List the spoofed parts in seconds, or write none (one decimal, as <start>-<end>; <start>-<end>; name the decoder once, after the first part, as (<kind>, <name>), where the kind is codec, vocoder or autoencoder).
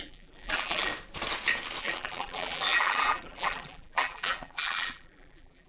0.0-0.9 (vocoder, BigVGAN v2); 1.8-5.7